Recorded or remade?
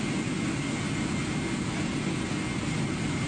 recorded